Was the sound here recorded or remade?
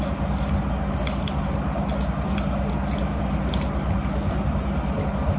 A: recorded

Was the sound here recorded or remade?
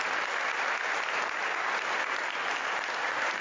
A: recorded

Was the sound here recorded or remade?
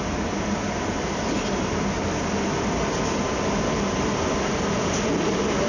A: recorded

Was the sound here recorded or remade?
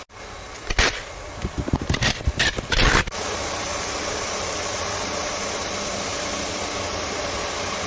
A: recorded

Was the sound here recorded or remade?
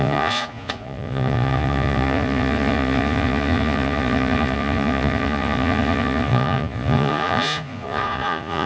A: remade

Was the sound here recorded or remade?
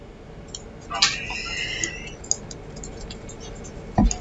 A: recorded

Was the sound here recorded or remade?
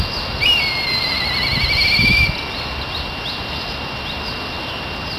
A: recorded